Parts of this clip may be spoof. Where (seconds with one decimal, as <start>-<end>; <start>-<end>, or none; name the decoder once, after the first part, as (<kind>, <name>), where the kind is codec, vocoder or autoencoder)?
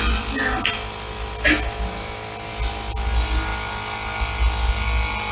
none